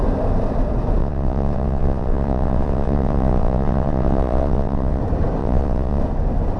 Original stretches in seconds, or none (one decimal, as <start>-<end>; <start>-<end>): 0.0-1.0; 5.0-5.4; 6.0-6.6